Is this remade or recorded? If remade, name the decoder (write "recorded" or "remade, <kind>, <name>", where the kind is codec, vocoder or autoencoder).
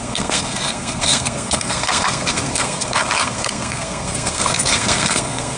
remade, codec, SNAC